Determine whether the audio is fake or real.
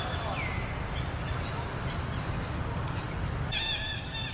real